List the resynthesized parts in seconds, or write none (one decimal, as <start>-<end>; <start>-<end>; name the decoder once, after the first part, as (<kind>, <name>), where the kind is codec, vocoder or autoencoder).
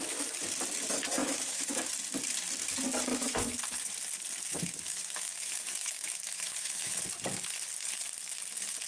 1.2-1.9 (autoencoder, DAC-VAE); 3.1-3.6; 4.5-7.0